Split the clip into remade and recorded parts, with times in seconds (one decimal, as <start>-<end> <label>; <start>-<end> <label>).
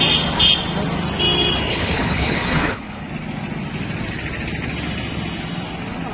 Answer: 0.0-1.7 recorded; 1.7-3.1 remade; 3.1-6.1 recorded